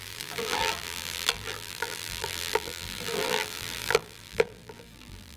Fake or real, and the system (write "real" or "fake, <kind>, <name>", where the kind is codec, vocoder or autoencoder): fake, vocoder, BigVGAN v2